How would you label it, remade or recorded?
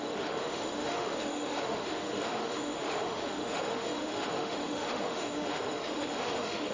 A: remade